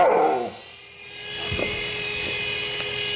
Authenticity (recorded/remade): recorded